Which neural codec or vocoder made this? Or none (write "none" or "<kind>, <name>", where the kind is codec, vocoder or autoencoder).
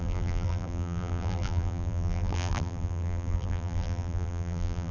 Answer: vocoder, BigVGAN v2